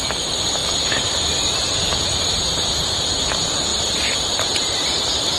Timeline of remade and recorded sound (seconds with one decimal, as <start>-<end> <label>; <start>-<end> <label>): 0.0-0.6 recorded; 0.6-3.1 remade; 3.1-3.7 recorded; 3.7-5.4 remade